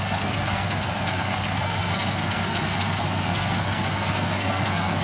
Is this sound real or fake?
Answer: fake